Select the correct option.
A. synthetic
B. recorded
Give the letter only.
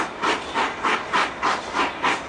B